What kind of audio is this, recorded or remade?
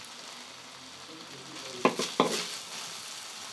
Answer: recorded